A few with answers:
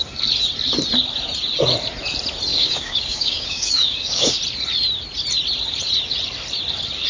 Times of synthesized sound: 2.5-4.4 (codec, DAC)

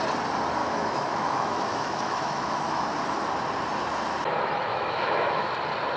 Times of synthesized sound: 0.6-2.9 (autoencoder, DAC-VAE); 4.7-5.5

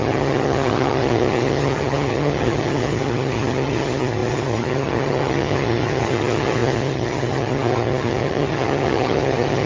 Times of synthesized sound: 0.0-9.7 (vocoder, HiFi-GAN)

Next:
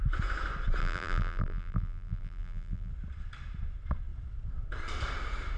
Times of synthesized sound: 0.8-2.9 (vocoder, BigVGAN v2)